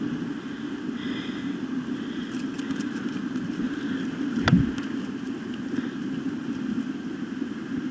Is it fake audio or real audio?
real